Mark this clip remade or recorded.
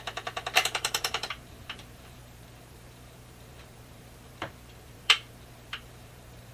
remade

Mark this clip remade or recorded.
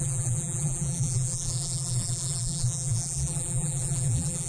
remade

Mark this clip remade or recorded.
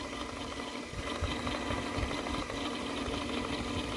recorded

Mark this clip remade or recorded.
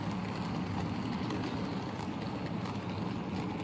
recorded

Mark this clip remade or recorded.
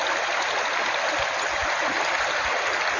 recorded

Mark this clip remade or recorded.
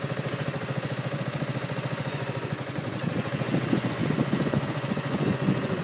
remade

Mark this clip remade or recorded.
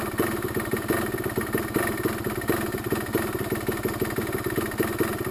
recorded